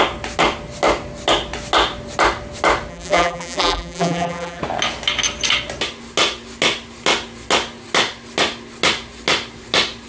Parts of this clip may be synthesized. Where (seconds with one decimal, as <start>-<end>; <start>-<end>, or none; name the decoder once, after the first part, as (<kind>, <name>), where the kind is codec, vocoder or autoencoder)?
2.9-4.6 (vocoder, BigVGAN v2)